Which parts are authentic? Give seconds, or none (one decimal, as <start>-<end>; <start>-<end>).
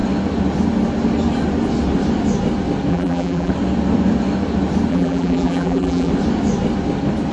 0.0-2.9; 3.5-4.9; 6.1-7.3